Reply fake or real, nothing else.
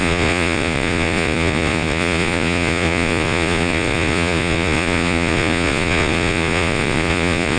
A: fake